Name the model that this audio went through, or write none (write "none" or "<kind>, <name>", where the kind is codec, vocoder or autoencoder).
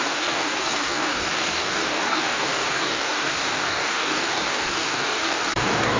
codec, DAC